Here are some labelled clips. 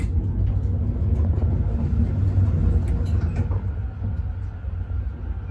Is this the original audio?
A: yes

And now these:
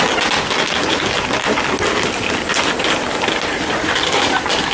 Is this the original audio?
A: yes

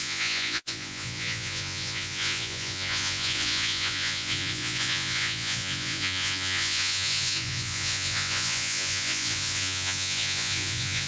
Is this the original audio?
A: no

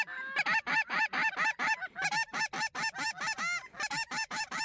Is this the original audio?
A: yes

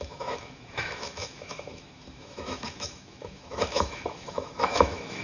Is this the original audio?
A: no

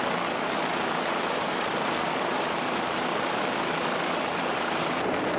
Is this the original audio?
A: no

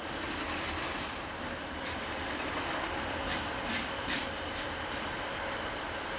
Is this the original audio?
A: no